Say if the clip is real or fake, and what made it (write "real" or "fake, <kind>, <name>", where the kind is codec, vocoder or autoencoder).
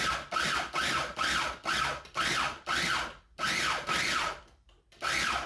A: real